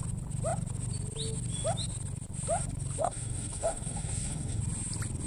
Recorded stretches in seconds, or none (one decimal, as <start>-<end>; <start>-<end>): 0.0-3.0; 4.6-5.3